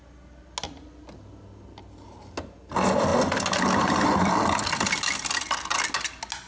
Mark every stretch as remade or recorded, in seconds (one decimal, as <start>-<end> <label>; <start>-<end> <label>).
0.0-6.5 recorded